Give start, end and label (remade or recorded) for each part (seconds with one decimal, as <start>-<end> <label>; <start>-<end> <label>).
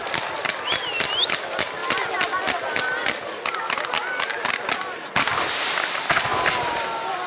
0.0-7.3 recorded